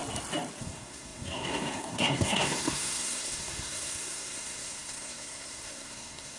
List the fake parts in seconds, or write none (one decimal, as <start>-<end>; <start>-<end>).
0.6-6.4